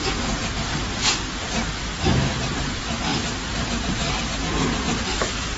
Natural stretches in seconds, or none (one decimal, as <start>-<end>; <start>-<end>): 0.4-1.4; 3.1-5.0